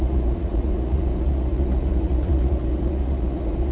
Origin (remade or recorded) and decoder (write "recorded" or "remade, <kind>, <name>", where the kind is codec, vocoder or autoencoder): remade, vocoder, Vocos